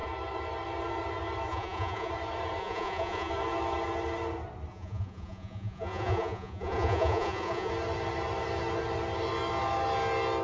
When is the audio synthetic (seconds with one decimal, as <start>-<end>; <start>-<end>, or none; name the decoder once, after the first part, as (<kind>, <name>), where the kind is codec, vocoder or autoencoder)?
1.5-2.1 (vocoder, Vocos); 2.6-3.3; 4.7-7.7

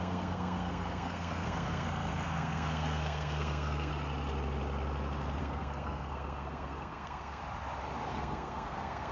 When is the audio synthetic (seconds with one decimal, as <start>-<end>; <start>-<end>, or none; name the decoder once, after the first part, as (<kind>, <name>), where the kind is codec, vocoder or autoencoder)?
0.0-3.9 (codec, SNAC); 5.4-7.4; 8.1-9.1

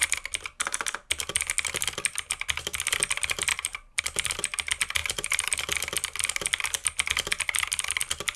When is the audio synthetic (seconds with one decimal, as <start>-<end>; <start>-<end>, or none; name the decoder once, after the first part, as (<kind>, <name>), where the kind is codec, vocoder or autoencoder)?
3.5-4.0 (vocoder, BigVGAN v2); 5.0-5.6

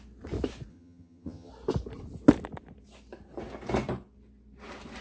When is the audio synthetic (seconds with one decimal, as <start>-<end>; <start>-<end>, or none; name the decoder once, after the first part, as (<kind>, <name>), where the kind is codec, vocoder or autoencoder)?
0.7-1.5 (vocoder, HiFi-GAN)

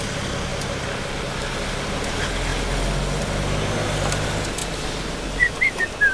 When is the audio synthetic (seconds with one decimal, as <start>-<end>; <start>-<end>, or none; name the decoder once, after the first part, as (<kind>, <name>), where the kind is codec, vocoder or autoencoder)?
none

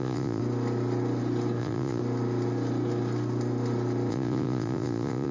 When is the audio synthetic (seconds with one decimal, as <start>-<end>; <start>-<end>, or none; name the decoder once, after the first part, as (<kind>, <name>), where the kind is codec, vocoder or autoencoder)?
0.0-0.4 (vocoder, Vocos); 1.6-2.0; 4.1-5.3